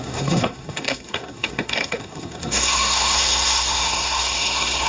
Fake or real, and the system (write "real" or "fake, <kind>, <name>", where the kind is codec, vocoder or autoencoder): fake, codec, SNAC